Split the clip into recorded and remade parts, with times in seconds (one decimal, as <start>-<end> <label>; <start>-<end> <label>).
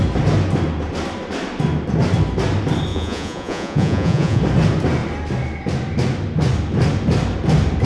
0.0-2.9 recorded; 2.9-4.4 remade; 4.4-7.9 recorded